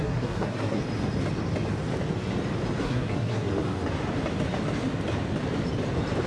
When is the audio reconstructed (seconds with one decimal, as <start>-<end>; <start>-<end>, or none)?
0.0-0.8; 2.8-3.5